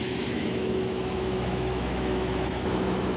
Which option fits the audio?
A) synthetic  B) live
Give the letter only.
A